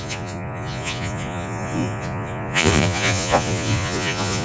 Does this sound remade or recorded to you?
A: remade